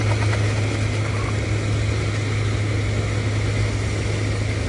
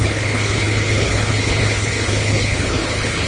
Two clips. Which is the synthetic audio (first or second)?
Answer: second